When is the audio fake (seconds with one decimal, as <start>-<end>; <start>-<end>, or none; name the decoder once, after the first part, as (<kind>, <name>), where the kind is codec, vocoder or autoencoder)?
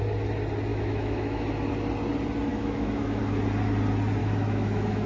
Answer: 0.7-1.5 (autoencoder, DAC-VAE); 2.5-3.2; 4.2-5.1